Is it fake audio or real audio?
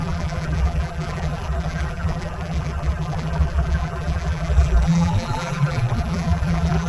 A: fake